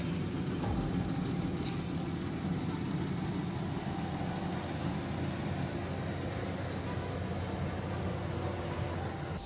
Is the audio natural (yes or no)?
yes